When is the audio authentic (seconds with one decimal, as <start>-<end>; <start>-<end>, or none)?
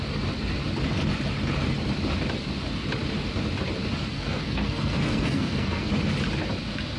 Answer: 0.0-4.1; 5.9-7.0